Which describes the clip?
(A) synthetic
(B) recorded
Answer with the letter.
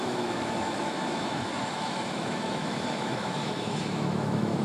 A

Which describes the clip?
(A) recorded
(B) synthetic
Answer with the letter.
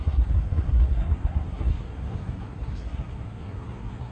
B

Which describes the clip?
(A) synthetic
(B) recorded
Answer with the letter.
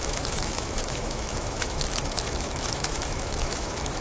A